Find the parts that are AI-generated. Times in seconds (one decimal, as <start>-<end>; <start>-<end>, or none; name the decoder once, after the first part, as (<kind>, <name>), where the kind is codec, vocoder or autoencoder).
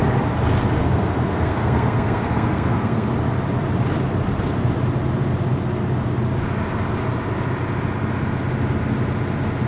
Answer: 0.8-3.1 (codec, SNAC)